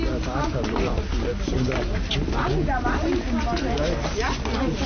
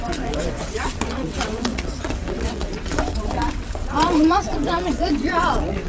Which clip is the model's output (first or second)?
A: second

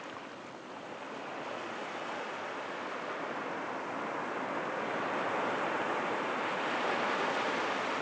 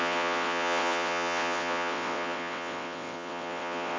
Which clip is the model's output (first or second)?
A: second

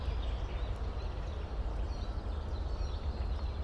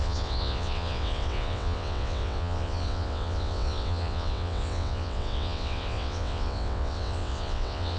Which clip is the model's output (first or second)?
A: second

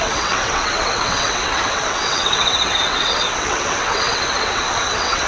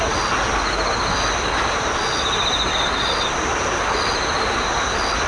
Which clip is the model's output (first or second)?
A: first